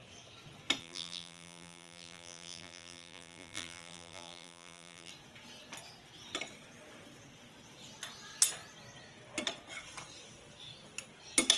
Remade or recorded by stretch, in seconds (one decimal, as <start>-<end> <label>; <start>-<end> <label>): 0.0-0.8 recorded; 0.8-5.1 remade; 5.1-11.6 recorded

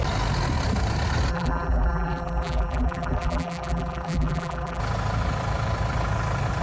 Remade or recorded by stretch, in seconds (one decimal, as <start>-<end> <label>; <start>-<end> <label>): 0.0-1.3 recorded; 1.3-4.8 remade; 4.8-6.6 recorded

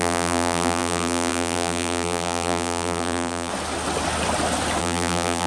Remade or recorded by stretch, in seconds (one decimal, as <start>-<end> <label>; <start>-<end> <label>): 0.0-3.5 remade; 3.5-4.8 recorded; 4.8-5.5 remade